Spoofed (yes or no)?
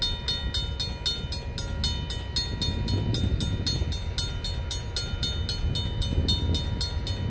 no